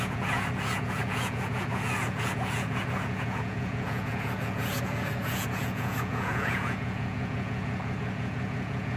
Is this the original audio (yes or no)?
no